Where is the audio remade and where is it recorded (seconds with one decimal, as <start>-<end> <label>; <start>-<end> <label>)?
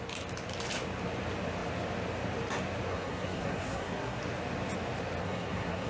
0.0-2.9 recorded; 2.9-4.2 remade; 4.2-5.2 recorded; 5.2-5.9 remade